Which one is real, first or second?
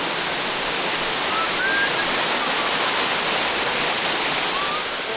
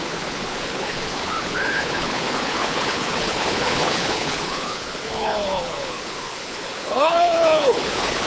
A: first